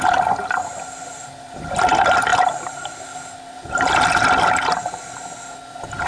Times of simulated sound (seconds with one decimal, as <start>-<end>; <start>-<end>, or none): none